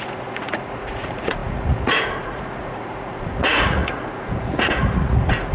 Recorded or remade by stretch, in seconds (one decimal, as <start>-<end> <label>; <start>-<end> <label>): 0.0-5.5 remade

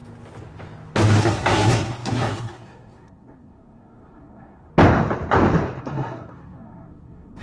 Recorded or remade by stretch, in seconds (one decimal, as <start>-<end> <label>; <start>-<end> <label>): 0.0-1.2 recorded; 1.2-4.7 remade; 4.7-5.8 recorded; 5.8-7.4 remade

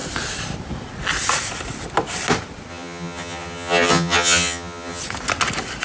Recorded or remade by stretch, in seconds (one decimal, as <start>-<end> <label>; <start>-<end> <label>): 0.0-2.7 recorded; 2.7-5.0 remade; 5.0-5.8 recorded